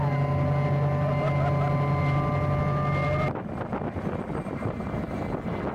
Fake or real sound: real